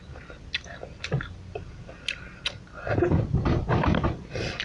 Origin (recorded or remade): recorded